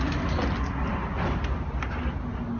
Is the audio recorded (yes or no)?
yes